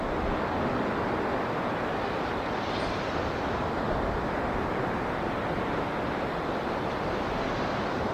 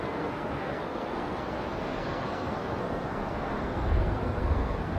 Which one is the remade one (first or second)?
second